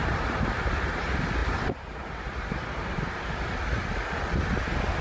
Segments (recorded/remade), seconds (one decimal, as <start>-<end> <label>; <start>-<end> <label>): 0.0-0.9 remade; 0.9-1.4 recorded; 1.4-3.2 remade; 3.2-5.0 recorded